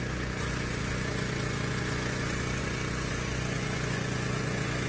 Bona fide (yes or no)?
no